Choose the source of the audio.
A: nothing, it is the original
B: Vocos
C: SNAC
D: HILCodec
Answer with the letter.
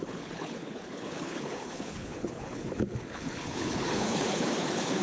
D